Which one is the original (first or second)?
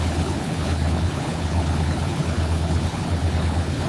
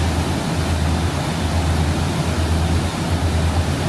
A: second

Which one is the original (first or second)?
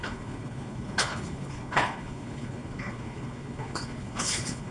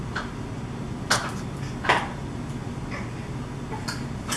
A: second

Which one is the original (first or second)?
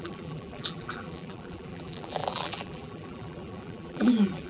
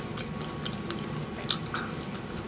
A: second